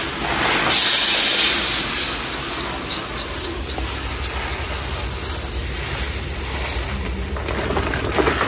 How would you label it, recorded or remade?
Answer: recorded